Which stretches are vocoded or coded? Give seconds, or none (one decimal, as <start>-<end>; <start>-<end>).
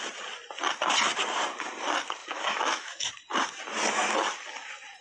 2.2-3.1